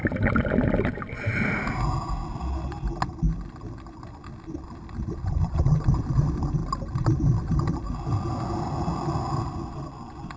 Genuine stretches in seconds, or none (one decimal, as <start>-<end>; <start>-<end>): 0.0-10.4